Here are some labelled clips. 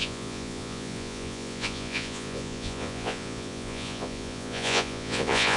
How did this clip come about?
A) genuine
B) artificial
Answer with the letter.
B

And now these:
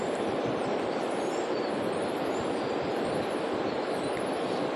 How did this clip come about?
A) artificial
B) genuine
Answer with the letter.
B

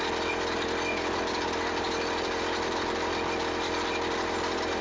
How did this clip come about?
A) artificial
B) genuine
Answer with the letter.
B